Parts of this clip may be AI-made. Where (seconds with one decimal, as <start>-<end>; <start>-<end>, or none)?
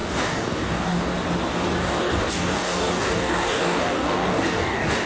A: 0.0-1.1; 1.8-5.1